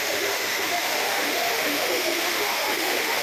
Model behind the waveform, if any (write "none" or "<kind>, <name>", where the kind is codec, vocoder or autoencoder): autoencoder, DAC-VAE